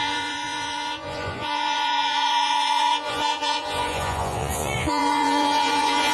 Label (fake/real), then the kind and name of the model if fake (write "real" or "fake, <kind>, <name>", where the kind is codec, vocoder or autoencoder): fake, vocoder, Vocos